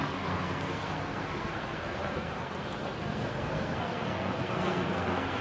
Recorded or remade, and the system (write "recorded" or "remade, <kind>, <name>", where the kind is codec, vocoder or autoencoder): remade, codec, SNAC